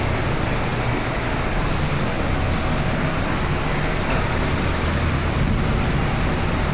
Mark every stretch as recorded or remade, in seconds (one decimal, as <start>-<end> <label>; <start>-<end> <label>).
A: 0.0-6.7 recorded